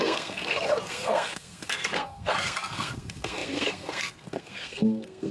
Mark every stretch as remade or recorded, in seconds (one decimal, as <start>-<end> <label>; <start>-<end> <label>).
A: 0.0-5.3 remade